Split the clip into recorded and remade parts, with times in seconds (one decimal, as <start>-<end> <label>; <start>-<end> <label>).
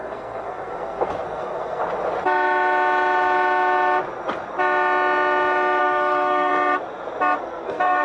0.0-1.8 remade; 1.8-5.8 recorded; 5.8-6.5 remade; 6.5-7.4 recorded; 7.4-8.0 remade